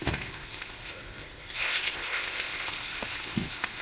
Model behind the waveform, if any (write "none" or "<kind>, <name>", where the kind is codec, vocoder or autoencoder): codec, ZipCodec